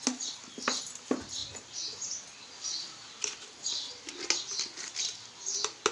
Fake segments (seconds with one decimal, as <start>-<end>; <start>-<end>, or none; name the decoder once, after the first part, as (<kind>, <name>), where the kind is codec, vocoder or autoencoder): none